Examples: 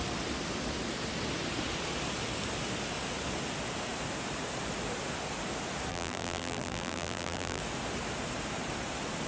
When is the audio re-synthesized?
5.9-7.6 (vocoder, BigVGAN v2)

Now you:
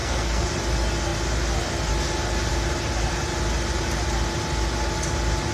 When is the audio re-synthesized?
0.0-0.5 (codec, SNAC)

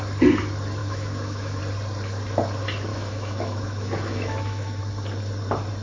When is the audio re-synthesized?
0.8-1.6 (autoencoder, DAC-VAE); 2.9-4.8

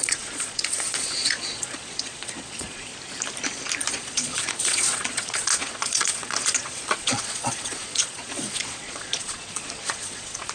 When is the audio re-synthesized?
0.0-2.9 (vocoder, Vocos); 3.9-10.5